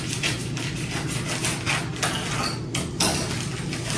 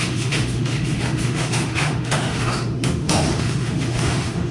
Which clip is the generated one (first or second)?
second